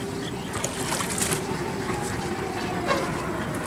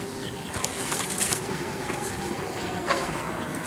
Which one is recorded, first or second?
first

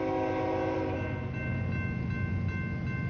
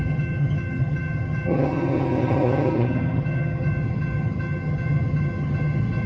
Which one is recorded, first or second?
first